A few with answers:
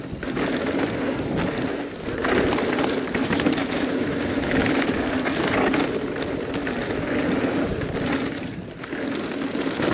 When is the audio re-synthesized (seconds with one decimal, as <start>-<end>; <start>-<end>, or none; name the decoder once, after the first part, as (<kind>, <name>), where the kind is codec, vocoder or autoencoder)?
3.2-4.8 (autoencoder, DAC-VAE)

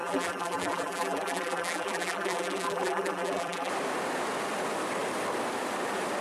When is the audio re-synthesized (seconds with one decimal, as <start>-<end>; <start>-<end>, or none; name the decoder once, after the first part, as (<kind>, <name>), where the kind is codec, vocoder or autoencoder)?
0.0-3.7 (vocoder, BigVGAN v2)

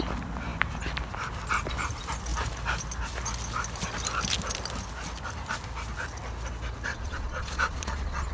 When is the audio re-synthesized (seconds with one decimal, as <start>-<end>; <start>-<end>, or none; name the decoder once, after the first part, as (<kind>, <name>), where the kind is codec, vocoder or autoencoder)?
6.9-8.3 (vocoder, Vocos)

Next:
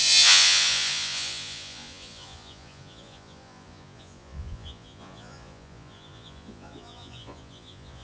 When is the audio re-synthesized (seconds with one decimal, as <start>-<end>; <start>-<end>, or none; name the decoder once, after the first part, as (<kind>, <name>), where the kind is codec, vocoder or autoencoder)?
0.0-8.0 (vocoder, Vocos)

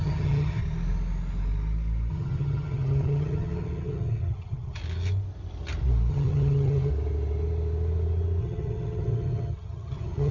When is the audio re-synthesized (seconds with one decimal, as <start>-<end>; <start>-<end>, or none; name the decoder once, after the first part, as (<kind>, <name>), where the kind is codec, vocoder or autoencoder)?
0.0-0.6 (vocoder, HiFi-GAN); 2.1-4.8; 6.1-6.9; 8.4-10.3